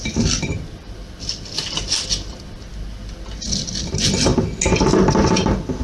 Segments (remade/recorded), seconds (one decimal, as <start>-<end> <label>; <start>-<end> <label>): 0.0-4.3 remade; 4.3-5.8 recorded